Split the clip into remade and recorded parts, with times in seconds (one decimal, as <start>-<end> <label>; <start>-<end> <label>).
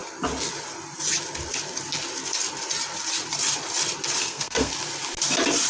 0.0-4.2 recorded; 4.2-4.7 remade; 4.7-5.7 recorded